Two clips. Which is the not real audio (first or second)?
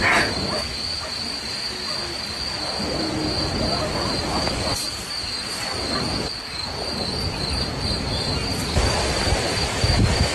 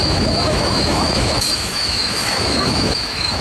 second